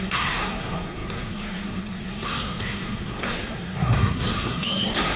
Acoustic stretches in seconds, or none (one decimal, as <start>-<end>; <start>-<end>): none